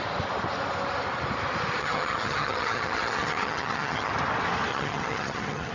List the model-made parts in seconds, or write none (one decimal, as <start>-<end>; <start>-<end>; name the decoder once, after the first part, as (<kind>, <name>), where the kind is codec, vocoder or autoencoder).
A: 1.8-4.1 (vocoder, HiFi-GAN); 4.7-5.7